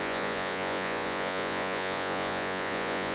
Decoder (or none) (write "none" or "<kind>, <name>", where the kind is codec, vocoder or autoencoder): vocoder, Vocos